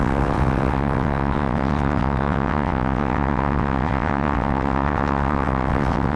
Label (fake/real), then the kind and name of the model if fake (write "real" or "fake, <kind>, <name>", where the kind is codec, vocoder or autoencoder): fake, vocoder, WaveNeXt